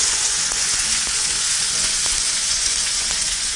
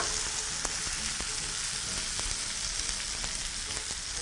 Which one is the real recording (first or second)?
second